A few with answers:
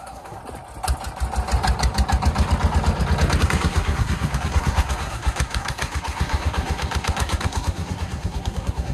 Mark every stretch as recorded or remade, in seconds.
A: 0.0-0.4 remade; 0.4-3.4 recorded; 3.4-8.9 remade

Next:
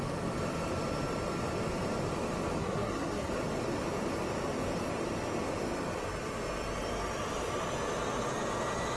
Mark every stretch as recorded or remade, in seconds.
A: 0.0-2.6 recorded; 2.6-3.3 remade; 3.3-9.0 recorded